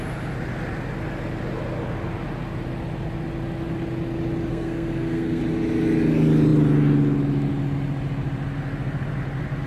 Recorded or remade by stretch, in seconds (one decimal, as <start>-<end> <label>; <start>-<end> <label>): 0.0-4.5 recorded; 4.5-5.4 remade; 5.4-9.7 recorded